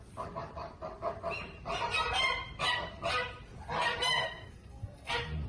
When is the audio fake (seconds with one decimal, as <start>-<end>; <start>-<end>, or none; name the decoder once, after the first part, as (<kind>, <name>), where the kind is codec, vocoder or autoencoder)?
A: 4.2-5.1 (codec, SNAC)